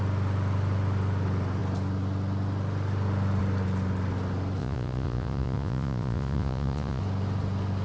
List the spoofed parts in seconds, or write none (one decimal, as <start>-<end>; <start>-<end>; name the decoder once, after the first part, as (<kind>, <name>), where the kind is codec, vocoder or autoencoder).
4.6-7.0 (vocoder, Vocos)